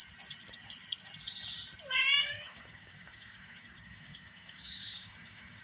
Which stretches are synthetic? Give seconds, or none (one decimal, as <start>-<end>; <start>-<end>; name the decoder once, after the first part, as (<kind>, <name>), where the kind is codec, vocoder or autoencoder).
2.2-5.6 (codec, DAC)